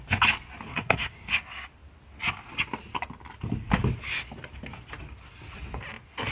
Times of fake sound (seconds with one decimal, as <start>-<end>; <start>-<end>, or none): 0.7-1.3